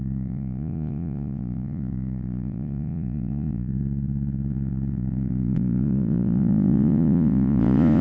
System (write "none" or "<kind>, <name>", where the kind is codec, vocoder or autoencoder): vocoder, Vocos